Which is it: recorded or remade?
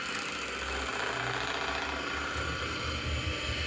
recorded